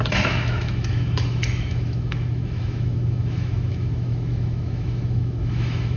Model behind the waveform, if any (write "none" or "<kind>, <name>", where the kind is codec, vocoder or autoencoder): autoencoder, DAC-VAE